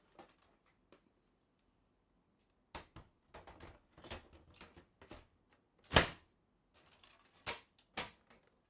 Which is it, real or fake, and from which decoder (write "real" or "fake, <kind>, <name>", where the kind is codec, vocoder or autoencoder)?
real